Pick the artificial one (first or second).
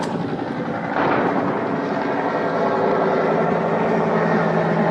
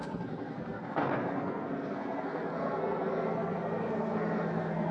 second